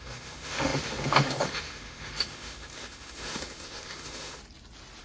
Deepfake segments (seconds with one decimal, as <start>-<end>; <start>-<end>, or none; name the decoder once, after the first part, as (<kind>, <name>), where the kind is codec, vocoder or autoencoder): 0.0-4.4 (autoencoder, DAC-VAE)